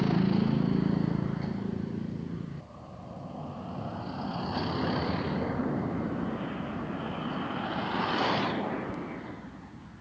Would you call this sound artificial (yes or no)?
no